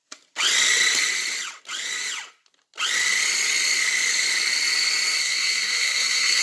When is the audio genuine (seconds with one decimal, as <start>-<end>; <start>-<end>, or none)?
0.0-5.2